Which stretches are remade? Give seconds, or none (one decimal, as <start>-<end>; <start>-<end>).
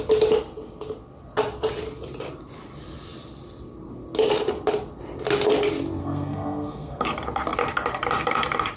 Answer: 6.0-7.0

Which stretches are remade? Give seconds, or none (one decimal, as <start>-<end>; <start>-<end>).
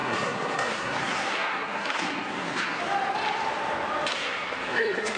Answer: 0.0-2.8; 4.1-5.2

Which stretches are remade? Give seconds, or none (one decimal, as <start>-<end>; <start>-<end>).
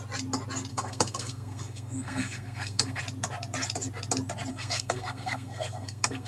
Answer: 0.7-3.0; 4.5-6.3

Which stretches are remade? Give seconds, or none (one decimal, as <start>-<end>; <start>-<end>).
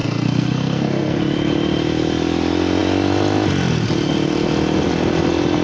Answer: 0.0-1.2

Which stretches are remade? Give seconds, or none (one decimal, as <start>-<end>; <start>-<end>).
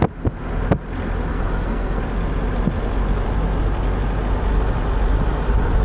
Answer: 1.3-2.0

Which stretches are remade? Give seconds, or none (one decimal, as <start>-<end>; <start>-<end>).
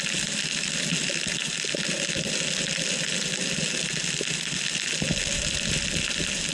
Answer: none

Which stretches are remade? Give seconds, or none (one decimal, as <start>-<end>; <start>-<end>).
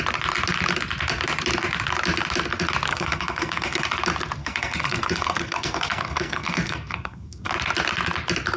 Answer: 2.9-3.9; 4.4-7.5